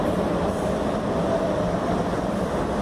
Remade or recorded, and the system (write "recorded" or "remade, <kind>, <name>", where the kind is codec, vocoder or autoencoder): recorded